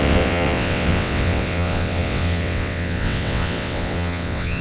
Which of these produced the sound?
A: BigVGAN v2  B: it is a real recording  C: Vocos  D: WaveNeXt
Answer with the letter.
D